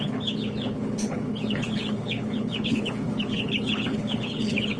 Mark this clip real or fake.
fake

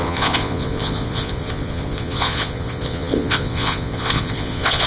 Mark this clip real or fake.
fake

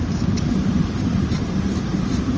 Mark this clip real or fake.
real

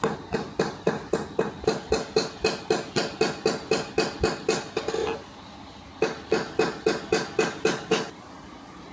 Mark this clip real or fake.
real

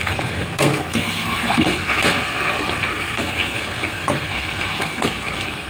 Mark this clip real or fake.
fake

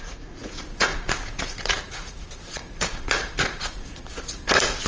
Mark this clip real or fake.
fake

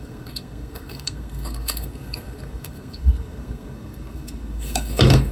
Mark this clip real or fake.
fake